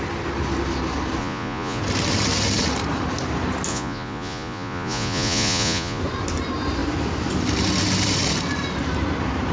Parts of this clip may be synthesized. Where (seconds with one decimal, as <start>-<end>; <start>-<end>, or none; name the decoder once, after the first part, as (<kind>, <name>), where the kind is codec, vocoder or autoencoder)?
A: 1.2-1.8 (vocoder, Vocos); 3.7-6.0